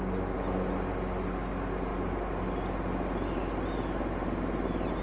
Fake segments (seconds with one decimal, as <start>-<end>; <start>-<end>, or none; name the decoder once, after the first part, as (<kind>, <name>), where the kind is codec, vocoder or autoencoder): none